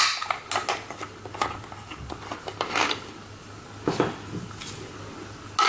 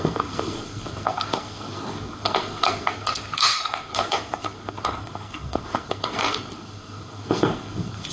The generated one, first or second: second